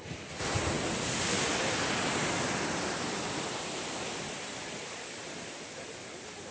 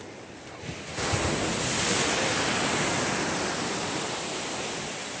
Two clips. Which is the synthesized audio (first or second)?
first